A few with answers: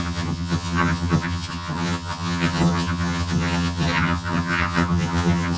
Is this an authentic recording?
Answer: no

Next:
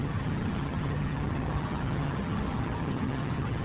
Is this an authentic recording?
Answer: no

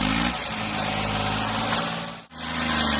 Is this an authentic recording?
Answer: yes